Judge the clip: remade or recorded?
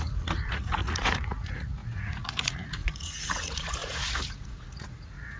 remade